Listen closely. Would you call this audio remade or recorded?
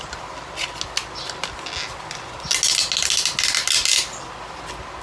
recorded